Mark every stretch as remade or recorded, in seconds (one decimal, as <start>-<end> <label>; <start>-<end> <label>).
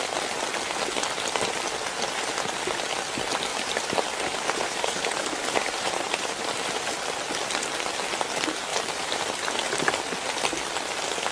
0.0-3.5 recorded; 3.5-6.9 remade; 6.9-8.7 recorded; 8.7-9.2 remade; 9.2-11.3 recorded